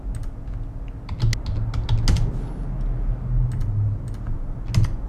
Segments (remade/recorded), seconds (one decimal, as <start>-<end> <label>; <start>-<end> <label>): 0.0-5.1 recorded